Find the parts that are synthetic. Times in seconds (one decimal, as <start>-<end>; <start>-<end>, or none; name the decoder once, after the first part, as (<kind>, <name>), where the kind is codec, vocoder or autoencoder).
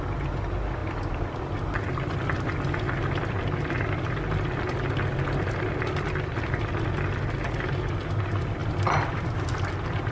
8.6-9.3 (vocoder, BigVGAN v2)